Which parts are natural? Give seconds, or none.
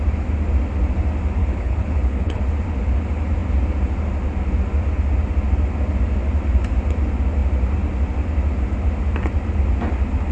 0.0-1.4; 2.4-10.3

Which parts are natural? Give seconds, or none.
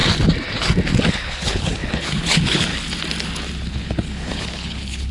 0.0-1.1; 2.7-3.7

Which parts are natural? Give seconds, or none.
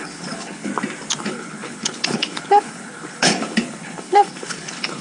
0.7-1.2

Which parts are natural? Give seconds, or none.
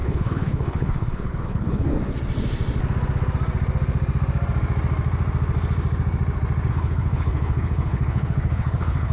1.9-6.7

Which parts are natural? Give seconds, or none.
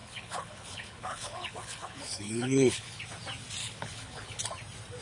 3.0-3.6; 4.4-5.0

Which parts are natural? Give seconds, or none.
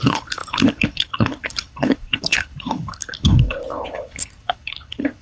none